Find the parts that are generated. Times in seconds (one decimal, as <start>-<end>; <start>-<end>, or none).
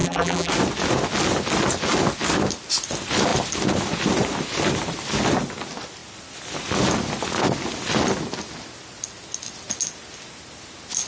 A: 0.0-0.5